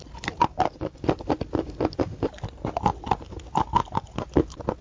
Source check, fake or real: real